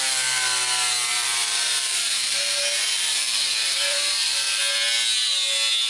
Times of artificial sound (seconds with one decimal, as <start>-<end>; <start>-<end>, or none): 1.1-4.6